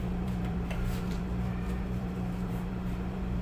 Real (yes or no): no